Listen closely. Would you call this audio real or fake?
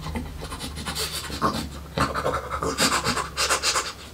real